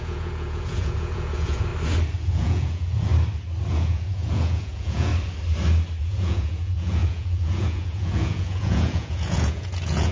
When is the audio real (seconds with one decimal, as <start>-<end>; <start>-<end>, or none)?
1.7-2.2; 3.1-3.7; 5.1-6.0